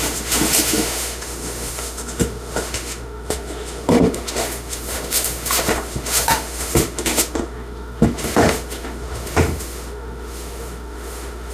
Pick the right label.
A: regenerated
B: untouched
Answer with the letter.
A